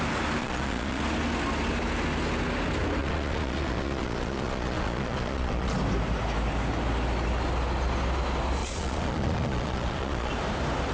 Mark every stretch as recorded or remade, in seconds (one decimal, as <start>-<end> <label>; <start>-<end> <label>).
0.0-0.4 recorded; 0.4-1.0 remade; 1.0-3.0 recorded; 3.0-5.7 remade; 5.7-8.6 recorded; 8.6-10.3 remade; 10.3-10.9 recorded